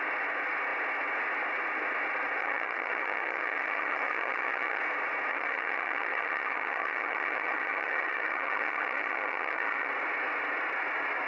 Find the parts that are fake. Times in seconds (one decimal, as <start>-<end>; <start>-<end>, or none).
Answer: 2.4-4.8; 5.3-9.9